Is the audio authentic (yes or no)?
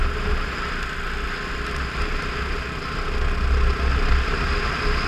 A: yes